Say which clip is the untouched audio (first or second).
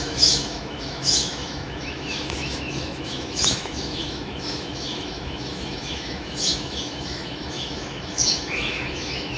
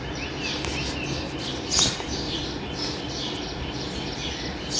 second